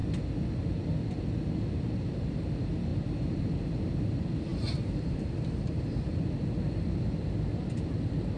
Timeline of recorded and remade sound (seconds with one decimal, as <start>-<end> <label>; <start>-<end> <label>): 0.0-2.9 recorded; 2.9-3.8 remade; 3.8-4.5 recorded; 4.5-5.8 remade; 5.8-8.4 recorded